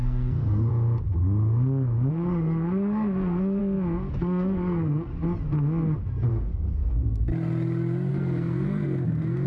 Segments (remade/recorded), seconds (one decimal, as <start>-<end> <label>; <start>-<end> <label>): 0.0-0.7 remade; 0.7-2.1 recorded; 2.1-3.6 remade; 3.6-4.2 recorded; 4.2-5.1 remade; 5.1-6.3 recorded; 6.3-7.3 remade; 7.3-8.1 recorded; 8.1-9.5 remade